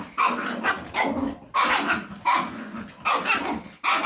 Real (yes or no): yes